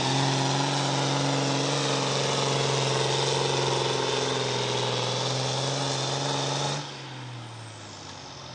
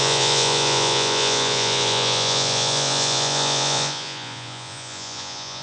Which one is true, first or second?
first